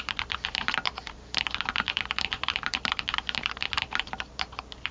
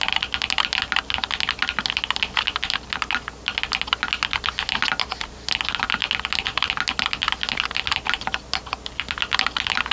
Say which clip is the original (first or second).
second